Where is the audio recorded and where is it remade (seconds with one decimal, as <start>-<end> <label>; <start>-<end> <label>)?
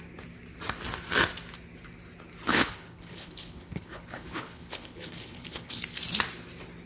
0.0-2.5 recorded; 2.5-5.8 remade; 5.8-6.9 recorded